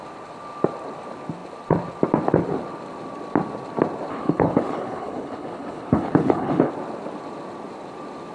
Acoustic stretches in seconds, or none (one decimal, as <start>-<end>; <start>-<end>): 0.0-4.1; 6.7-8.3